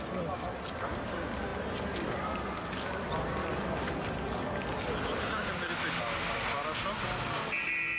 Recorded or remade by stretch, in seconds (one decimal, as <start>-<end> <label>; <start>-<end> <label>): 0.0-8.0 recorded